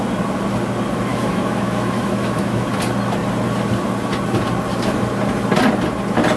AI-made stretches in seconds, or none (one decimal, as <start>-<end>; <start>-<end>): 1.1-2.7